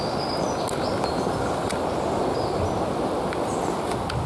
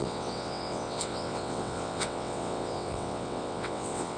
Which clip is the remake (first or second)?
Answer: second